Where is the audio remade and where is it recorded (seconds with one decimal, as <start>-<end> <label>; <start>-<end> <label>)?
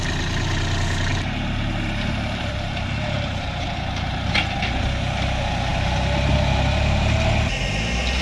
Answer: 0.0-1.1 recorded; 1.1-4.3 remade; 4.3-8.2 recorded